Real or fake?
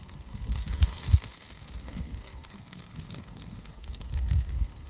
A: fake